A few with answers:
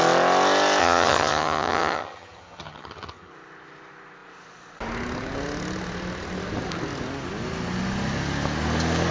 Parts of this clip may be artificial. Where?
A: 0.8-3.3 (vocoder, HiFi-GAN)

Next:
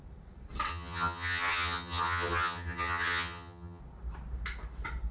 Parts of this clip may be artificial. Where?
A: 0.7-3.8 (vocoder, HiFi-GAN)